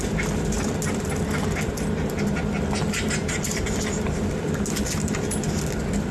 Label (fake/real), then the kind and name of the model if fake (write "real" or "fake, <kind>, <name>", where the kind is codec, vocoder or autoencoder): real